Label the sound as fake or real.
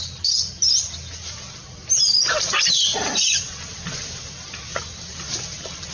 real